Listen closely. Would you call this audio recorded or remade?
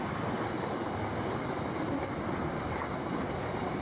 recorded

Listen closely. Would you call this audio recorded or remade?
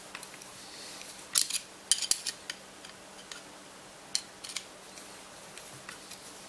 recorded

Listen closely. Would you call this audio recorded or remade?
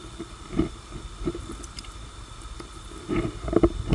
recorded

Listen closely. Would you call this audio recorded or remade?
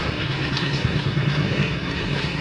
remade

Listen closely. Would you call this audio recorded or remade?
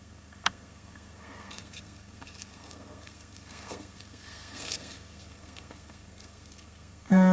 remade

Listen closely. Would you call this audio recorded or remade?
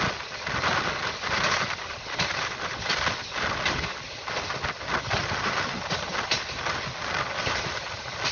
recorded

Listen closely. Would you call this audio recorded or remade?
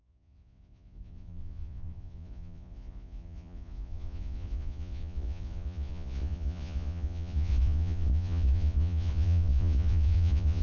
remade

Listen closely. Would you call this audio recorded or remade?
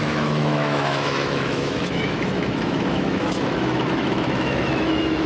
remade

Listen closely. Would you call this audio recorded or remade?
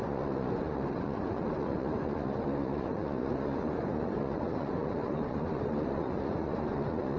remade